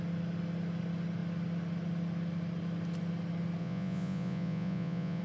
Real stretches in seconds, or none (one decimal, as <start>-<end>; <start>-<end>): 0.0-3.6